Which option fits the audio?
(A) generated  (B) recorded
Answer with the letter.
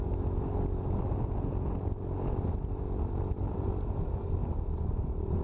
B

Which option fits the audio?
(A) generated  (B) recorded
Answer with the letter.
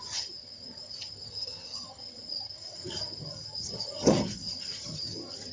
A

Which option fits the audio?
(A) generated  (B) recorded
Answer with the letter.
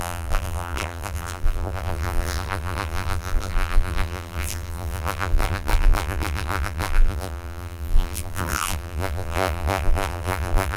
A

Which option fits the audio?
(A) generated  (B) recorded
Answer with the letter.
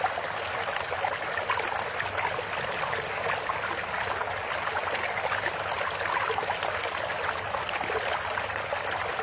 B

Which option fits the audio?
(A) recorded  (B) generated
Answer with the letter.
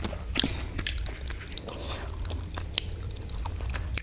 A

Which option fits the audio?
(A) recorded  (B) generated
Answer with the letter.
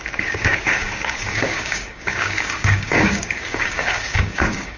B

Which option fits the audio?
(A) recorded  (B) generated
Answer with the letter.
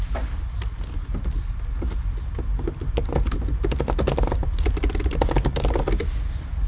A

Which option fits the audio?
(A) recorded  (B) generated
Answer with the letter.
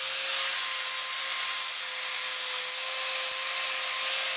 A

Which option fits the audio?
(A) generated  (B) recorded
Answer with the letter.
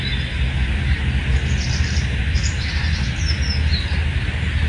B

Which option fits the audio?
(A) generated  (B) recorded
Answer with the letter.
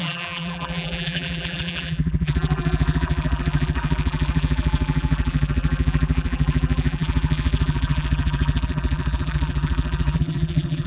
A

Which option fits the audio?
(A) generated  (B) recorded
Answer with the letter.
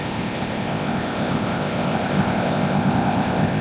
A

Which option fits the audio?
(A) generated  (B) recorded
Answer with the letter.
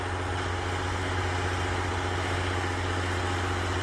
B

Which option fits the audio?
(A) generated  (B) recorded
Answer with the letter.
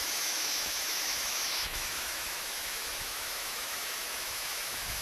A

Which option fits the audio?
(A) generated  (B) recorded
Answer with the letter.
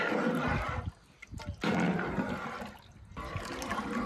B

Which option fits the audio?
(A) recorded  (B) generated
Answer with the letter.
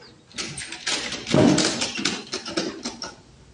A